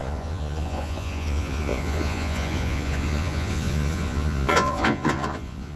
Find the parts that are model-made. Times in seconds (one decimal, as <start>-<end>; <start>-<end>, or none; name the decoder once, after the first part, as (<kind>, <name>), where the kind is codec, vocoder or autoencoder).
0.0-5.8 (vocoder, Vocos)